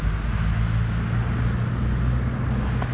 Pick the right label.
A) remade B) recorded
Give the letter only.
B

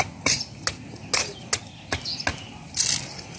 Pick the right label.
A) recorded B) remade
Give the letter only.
A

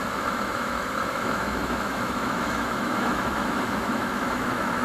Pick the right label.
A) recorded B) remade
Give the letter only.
B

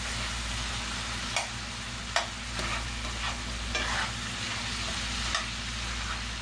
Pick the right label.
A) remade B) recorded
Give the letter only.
B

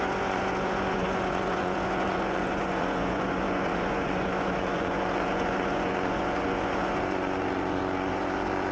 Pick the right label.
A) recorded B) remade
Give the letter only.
B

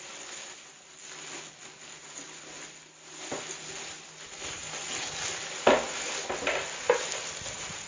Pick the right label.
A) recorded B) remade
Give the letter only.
A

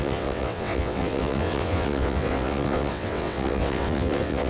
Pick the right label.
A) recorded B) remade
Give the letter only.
B